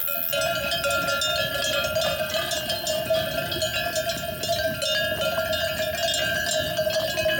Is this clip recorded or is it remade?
recorded